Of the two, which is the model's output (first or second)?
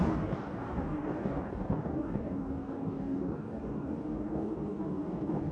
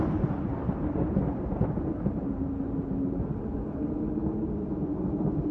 first